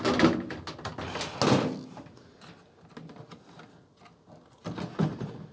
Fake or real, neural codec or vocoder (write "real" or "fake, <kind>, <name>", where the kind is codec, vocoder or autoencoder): real